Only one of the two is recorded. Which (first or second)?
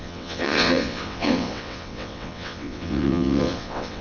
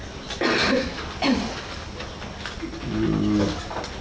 second